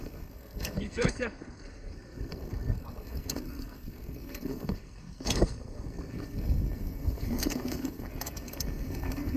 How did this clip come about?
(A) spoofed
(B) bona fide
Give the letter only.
A